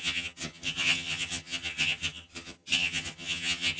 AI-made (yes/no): yes